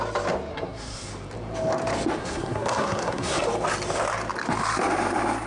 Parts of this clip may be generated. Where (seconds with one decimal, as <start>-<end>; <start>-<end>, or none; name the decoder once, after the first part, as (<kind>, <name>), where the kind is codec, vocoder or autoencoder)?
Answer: 0.5-1.1 (codec, SNAC); 2.2-3.4